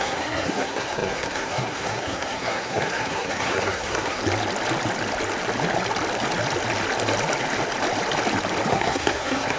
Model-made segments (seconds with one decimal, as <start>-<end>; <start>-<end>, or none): 0.0-4.2; 8.7-9.6